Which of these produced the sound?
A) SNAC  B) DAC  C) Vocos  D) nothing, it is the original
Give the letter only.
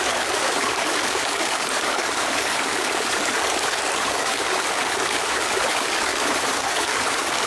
B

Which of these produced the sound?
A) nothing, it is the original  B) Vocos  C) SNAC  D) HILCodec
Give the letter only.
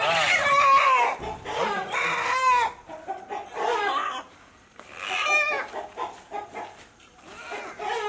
A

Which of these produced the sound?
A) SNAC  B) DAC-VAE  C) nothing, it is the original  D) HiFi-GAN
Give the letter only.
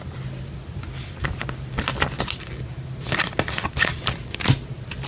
C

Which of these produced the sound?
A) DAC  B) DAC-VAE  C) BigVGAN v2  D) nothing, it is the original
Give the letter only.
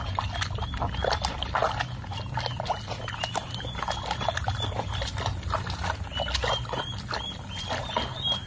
D